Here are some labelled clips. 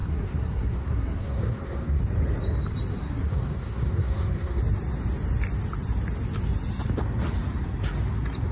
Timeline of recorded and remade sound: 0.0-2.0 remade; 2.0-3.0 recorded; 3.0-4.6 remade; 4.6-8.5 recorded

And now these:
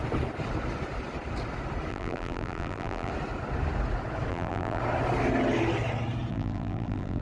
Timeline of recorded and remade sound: 0.0-1.9 recorded; 1.9-3.1 remade; 3.1-4.3 recorded; 4.3-4.8 remade; 4.8-6.3 recorded; 6.3-7.2 remade